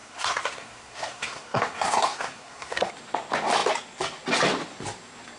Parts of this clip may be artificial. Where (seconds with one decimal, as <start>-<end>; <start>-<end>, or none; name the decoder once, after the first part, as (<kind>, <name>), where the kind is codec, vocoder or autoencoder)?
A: 0.0-2.9 (codec, SNAC)